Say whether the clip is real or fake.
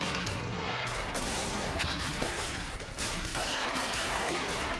fake